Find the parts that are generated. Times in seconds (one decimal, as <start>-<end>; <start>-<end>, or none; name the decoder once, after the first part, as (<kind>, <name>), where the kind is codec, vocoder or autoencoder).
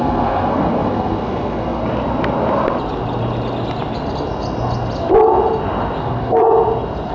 0.0-1.8 (codec, SNAC); 6.0-6.4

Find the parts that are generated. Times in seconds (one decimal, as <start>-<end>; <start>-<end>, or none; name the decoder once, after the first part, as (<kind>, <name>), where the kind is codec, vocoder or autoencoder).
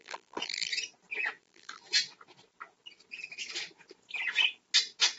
0.0-0.7 (vocoder, BigVGAN v2); 1.4-1.8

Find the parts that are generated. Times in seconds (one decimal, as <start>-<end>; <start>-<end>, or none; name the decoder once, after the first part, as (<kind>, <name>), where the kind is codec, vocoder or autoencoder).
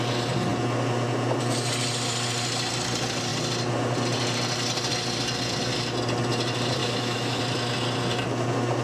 6.8-7.4 (autoencoder, DAC-VAE)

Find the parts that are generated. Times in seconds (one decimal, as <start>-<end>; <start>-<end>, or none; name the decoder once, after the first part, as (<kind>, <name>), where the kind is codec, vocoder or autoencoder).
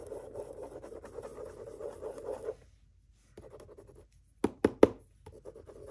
none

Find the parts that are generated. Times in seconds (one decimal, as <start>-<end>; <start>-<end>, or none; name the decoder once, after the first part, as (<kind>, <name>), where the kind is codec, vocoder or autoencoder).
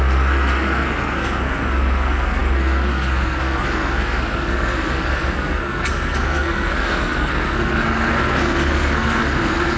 0.0-9.8 (codec, SNAC)